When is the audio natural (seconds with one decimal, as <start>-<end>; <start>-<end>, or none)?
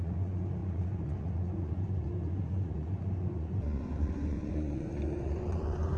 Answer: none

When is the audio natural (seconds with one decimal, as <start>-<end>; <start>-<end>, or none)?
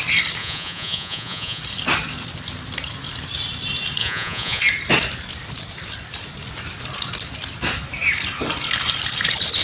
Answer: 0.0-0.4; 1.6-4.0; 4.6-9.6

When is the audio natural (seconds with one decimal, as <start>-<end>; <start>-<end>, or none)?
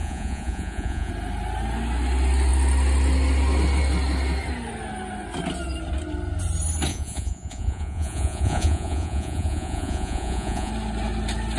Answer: 1.1-6.9; 10.7-11.6